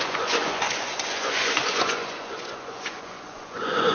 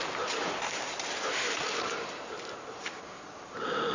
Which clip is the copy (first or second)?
first